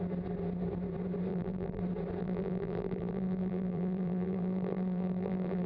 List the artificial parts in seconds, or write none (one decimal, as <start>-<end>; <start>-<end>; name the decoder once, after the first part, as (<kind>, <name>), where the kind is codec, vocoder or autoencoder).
1.3-1.8 (vocoder, BigVGAN v2); 2.2-5.7

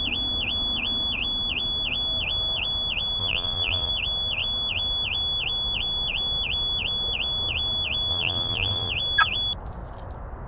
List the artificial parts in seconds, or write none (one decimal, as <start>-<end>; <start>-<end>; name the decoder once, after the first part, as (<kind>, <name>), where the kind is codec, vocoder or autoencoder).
3.2-3.9 (vocoder, BigVGAN v2); 8.1-8.9